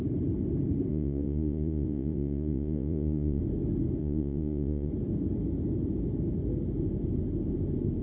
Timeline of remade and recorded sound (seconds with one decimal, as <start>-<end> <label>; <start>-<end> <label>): 0.0-0.9 recorded; 0.9-3.4 remade; 3.4-4.0 recorded; 4.0-4.9 remade; 4.9-8.0 recorded